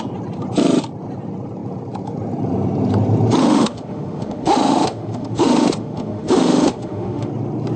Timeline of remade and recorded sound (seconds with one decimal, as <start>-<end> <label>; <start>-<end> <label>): 0.0-3.4 recorded; 3.4-7.3 remade; 7.3-7.8 recorded